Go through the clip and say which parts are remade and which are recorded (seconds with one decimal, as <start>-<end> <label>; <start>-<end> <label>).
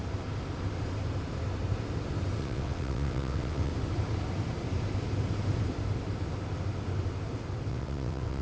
0.0-2.4 recorded; 2.4-3.7 remade; 3.7-7.7 recorded; 7.7-8.4 remade